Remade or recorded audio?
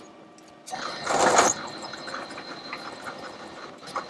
recorded